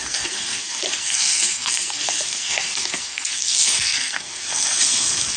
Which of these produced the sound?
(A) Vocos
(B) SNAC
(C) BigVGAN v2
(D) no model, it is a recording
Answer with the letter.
B